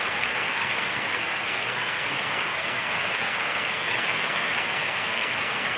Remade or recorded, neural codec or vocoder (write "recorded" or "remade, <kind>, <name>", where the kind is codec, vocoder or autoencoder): remade, codec, SNAC